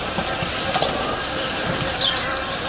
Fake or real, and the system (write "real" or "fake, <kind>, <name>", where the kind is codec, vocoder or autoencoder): real